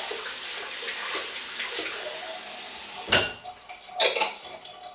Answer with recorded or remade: recorded